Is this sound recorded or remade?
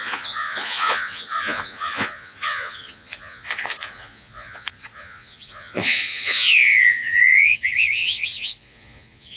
remade